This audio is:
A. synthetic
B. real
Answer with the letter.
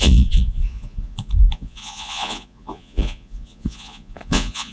A